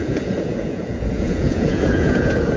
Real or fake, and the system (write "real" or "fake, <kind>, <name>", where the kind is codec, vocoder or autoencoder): fake, vocoder, Vocos